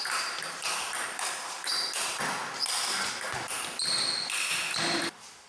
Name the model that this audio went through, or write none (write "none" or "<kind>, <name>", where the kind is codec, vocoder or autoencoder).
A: none